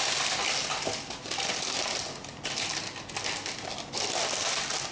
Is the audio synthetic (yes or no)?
no